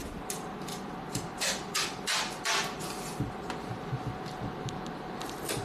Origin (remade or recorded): recorded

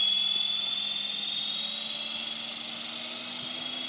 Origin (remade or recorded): recorded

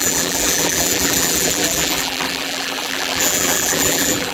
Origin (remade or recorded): remade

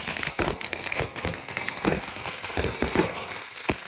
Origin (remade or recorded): remade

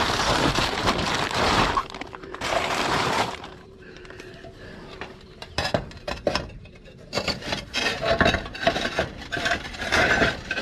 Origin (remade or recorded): remade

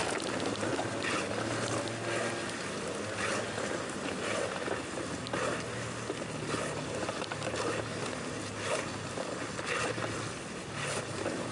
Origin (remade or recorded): recorded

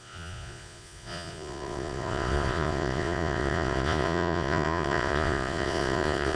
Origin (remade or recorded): remade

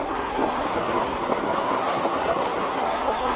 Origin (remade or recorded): remade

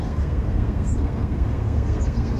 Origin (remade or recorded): remade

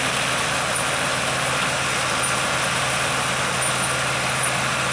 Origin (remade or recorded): recorded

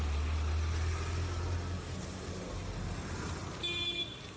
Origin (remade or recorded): recorded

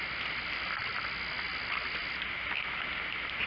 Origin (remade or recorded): recorded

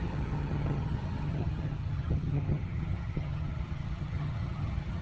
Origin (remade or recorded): remade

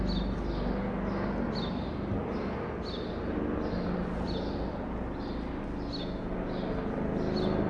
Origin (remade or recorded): recorded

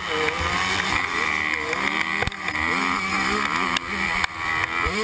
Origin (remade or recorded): recorded